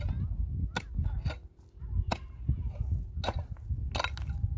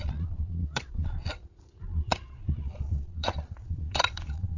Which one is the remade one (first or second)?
second